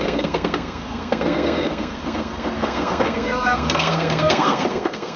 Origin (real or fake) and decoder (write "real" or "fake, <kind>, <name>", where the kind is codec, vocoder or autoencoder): fake, codec, SNAC